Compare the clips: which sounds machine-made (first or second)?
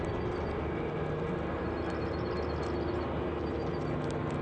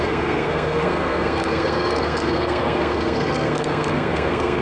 second